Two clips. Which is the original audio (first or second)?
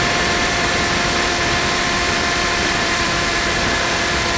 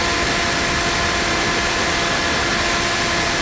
second